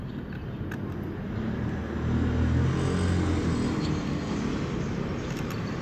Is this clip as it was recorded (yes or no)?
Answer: yes